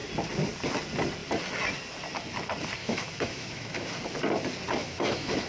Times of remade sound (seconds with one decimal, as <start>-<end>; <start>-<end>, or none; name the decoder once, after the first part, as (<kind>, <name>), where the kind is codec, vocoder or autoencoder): 2.8-3.9 (autoencoder, DAC-VAE); 4.8-5.5